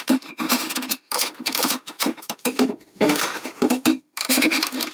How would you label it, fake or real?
fake